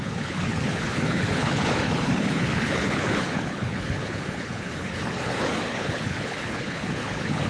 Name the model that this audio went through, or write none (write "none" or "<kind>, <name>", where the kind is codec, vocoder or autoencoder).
codec, HILCodec